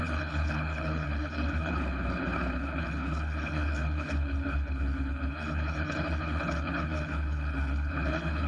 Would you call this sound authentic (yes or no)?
no